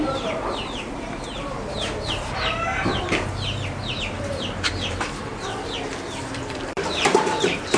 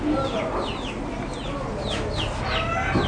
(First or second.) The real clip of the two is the second